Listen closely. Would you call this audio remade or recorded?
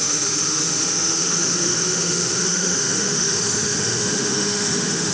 remade